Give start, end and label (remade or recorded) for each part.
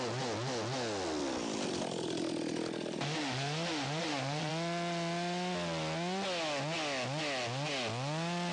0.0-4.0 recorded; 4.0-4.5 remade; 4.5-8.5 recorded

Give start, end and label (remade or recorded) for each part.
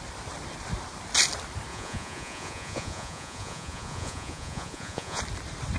0.0-1.7 recorded; 1.7-5.2 remade; 5.2-5.8 recorded